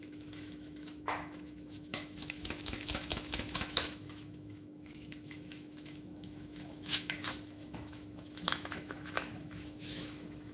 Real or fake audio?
fake